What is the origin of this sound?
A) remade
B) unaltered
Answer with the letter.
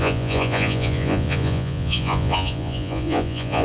A